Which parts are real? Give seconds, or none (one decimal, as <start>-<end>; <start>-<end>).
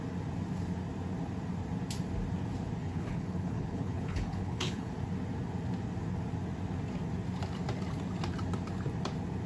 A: 0.0-2.8; 4.9-9.5